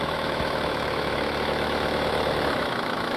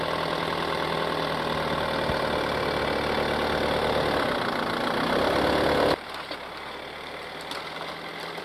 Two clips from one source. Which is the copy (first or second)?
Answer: first